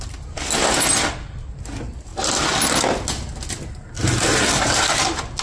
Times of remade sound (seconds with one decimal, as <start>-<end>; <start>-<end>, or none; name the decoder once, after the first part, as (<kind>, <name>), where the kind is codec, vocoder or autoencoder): none